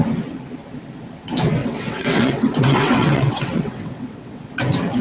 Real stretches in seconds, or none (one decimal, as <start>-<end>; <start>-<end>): 0.0-1.6; 4.5-5.0